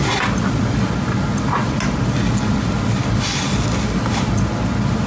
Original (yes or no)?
yes